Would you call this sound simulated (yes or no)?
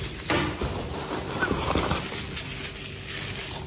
no